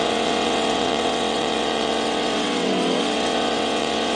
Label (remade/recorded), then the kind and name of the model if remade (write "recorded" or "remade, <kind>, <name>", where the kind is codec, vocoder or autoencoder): remade, vocoder, WaveNeXt